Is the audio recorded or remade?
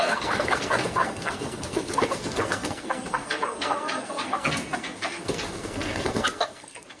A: remade